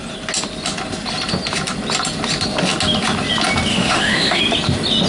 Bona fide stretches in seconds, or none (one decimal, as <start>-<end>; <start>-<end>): 0.0-3.7; 4.4-5.1